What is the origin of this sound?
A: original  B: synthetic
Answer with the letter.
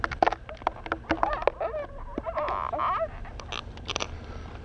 A